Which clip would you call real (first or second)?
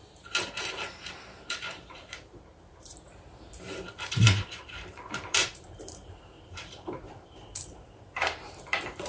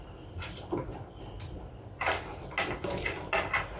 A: second